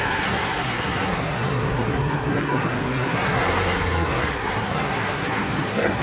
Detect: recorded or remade remade